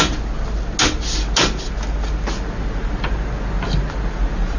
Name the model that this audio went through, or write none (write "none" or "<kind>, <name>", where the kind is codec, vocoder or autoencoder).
none